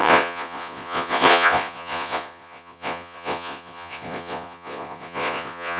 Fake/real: fake